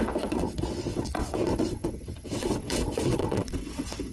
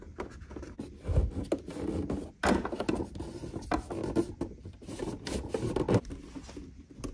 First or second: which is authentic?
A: second